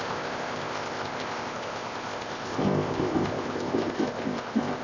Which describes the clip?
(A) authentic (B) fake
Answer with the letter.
B